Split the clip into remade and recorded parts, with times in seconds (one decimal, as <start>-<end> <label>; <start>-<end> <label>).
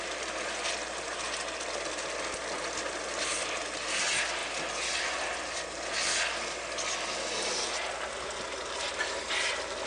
0.0-9.9 recorded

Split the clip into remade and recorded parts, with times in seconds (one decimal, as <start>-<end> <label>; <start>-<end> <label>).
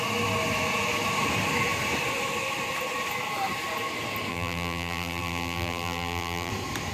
0.0-4.3 recorded; 4.3-6.5 remade; 6.5-6.9 recorded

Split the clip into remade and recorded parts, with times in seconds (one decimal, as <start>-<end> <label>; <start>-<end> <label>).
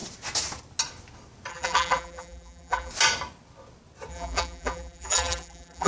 0.0-1.5 recorded; 1.5-2.9 remade; 2.9-4.1 recorded; 4.1-5.9 remade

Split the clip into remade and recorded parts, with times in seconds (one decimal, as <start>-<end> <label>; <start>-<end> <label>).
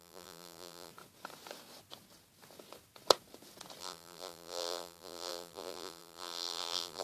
0.0-0.9 remade; 0.9-3.8 recorded; 3.8-7.0 remade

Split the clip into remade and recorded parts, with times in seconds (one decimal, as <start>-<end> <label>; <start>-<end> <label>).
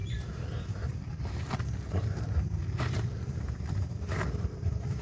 0.0-1.1 remade; 1.1-2.6 recorded; 2.6-5.0 remade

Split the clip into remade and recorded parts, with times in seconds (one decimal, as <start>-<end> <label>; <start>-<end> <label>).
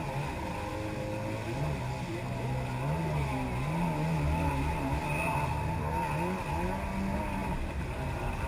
0.0-7.4 recorded; 7.4-8.5 remade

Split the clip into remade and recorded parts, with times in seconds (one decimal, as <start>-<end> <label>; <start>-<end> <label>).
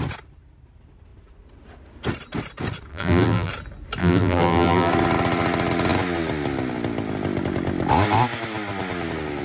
0.0-2.9 recorded; 2.9-3.5 remade; 3.5-4.0 recorded; 4.0-4.9 remade; 4.9-9.4 recorded